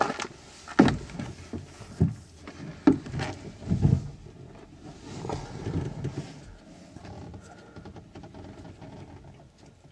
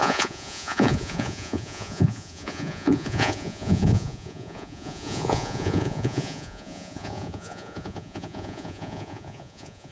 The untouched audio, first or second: first